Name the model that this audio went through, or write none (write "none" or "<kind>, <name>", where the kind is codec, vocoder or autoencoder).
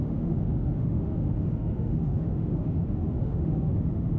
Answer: autoencoder, DAC-VAE